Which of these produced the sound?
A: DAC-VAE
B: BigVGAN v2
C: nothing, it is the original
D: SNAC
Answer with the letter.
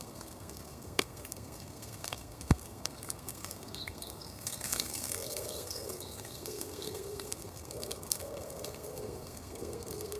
D